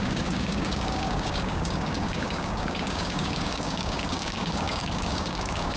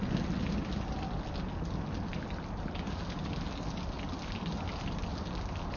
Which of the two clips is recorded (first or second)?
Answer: second